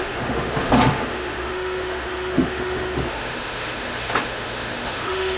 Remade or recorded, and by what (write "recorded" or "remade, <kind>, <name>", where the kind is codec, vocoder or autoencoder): remade, autoencoder, DAC-VAE